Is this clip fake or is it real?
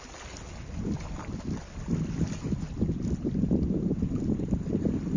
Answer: real